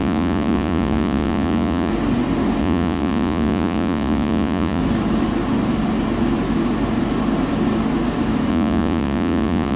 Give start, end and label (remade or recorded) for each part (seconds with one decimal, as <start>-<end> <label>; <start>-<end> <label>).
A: 0.0-1.9 remade; 1.9-2.6 recorded; 2.6-4.8 remade; 4.8-8.5 recorded; 8.5-9.8 remade